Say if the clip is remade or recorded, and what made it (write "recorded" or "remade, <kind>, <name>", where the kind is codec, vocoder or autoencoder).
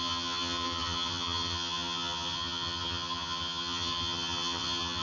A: remade, vocoder, HiFi-GAN